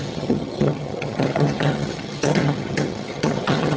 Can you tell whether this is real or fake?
fake